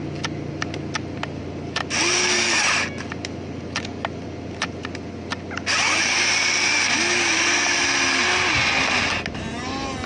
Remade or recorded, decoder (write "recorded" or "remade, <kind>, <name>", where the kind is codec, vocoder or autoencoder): recorded